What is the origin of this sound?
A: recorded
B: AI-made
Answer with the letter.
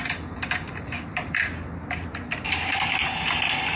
A